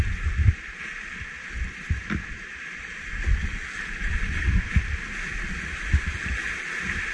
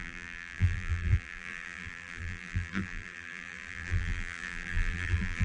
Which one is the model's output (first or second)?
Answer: second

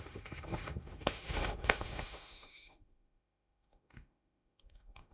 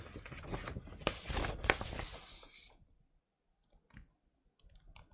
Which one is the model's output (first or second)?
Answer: first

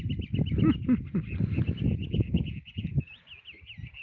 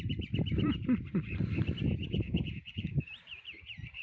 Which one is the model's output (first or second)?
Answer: second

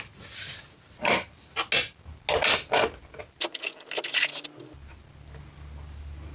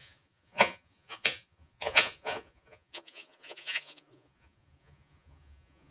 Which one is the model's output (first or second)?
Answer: second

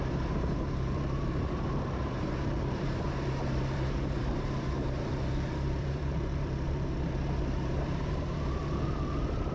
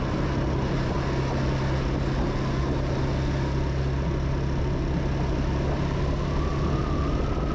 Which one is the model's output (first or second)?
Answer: first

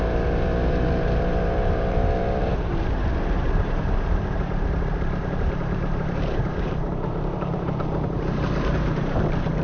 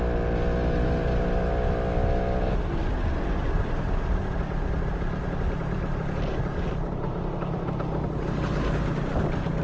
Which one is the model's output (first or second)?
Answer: first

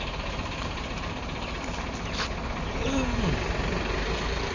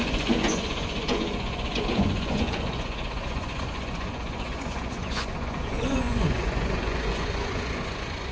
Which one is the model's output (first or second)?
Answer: second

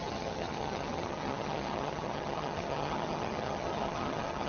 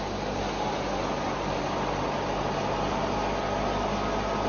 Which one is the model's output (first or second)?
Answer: first